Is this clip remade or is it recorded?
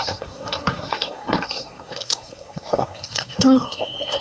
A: remade